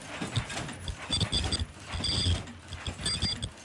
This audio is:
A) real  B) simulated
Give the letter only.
A